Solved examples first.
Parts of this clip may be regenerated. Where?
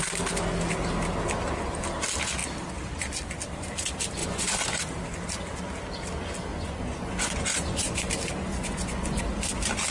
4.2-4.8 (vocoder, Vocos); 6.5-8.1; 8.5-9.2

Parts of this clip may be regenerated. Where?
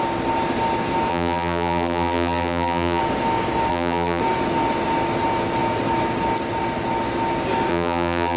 1.1-3.0 (vocoder, BigVGAN v2); 3.7-4.2; 7.7-8.4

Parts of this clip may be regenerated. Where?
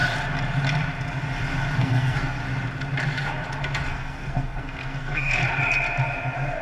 1.8-2.4 (codec, SNAC); 3.9-5.4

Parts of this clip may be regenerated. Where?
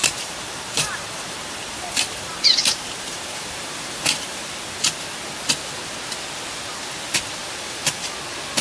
0.0-4.5 (vocoder, BigVGAN v2); 7.4-8.1